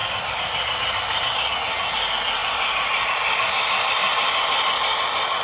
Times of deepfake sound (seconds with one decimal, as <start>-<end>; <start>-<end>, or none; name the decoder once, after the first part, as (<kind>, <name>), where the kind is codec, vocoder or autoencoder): 0.0-1.5 (vocoder, BigVGAN v2); 2.4-3.1